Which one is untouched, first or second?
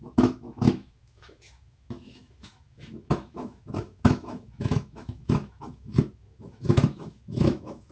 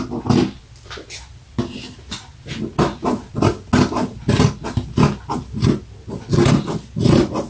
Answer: second